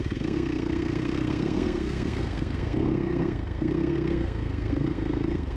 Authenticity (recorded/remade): remade